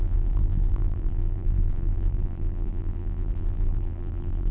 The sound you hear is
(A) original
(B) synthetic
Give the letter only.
B